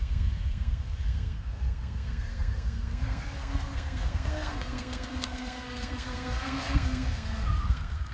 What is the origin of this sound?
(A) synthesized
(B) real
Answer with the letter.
A